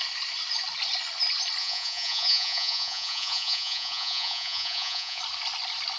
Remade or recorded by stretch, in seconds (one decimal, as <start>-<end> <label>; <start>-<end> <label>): 0.0-1.6 recorded; 1.6-5.2 remade; 5.2-6.0 recorded